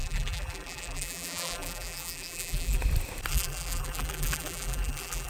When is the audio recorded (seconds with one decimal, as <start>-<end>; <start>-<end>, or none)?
2.8-3.3